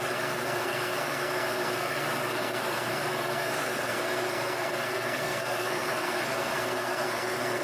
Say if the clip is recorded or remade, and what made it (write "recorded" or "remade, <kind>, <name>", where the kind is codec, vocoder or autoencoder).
remade, codec, SNAC